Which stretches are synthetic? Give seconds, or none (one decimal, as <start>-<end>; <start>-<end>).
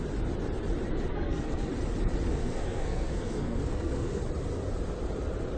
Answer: 1.1-1.7; 2.3-4.2